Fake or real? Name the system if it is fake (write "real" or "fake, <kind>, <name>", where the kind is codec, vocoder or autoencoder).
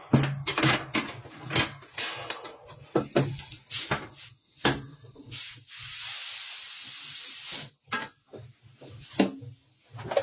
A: real